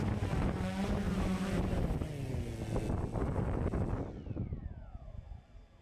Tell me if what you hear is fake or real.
real